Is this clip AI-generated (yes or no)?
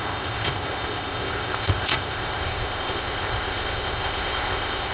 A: yes